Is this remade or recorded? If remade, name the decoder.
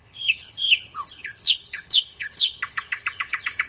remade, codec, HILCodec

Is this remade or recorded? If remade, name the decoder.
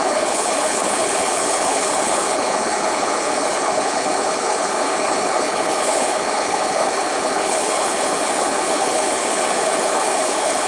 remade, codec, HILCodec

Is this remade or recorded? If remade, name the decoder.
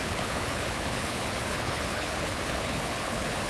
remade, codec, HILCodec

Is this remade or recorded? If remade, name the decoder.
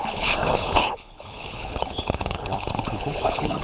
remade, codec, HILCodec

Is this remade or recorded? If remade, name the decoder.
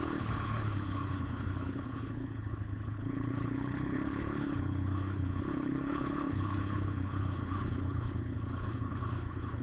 remade, codec, HILCodec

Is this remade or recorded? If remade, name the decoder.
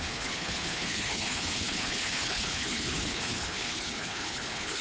remade, codec, HILCodec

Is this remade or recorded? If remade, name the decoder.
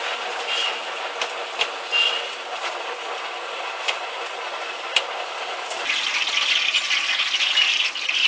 recorded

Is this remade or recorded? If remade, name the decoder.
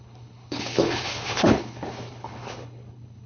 remade, codec, HILCodec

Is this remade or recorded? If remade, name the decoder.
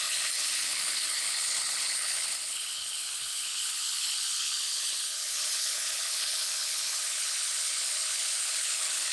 remade, codec, HILCodec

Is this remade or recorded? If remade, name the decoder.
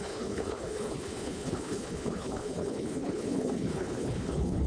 remade, codec, HILCodec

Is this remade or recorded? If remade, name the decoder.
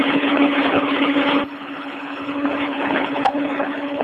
remade, codec, HILCodec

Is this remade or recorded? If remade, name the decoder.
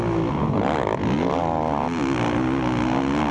recorded